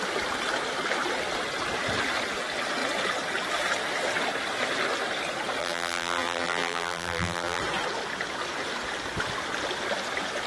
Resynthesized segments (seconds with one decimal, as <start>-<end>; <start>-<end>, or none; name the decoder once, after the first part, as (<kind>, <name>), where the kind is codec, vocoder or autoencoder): 5.6-7.6 (vocoder, BigVGAN v2)